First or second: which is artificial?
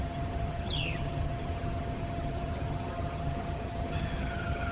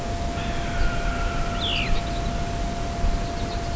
first